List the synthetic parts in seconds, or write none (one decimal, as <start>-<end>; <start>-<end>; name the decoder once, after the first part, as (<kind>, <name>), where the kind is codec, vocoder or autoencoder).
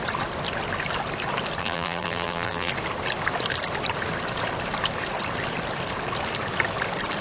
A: 1.6-2.7 (vocoder, BigVGAN v2)